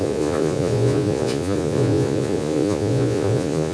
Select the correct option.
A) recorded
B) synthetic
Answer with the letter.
B